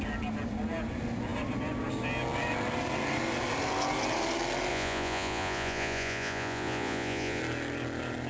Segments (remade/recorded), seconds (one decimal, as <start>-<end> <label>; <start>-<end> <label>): 0.0-4.7 recorded; 4.7-7.4 remade; 7.4-8.3 recorded